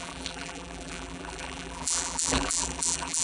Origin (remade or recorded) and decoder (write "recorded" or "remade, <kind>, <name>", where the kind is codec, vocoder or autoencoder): remade, vocoder, BigVGAN v2